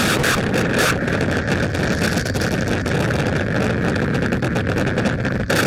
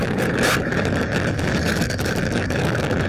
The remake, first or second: second